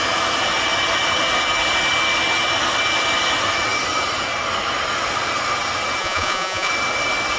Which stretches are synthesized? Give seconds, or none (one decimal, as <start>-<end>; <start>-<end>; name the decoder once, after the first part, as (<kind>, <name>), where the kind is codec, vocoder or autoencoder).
6.0-6.7 (vocoder, Vocos)